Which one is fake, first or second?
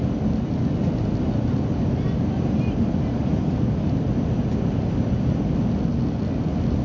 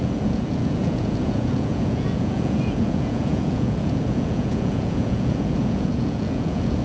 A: second